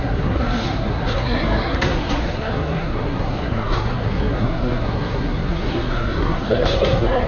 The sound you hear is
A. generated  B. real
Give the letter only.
A